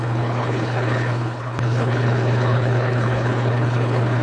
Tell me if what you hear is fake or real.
fake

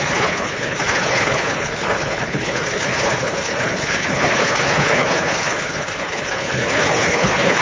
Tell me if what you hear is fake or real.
fake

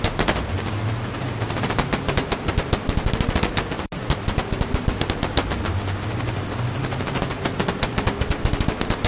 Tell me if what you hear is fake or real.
real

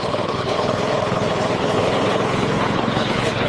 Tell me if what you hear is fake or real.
fake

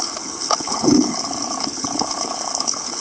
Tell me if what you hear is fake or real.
fake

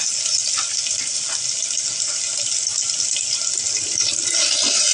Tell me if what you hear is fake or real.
real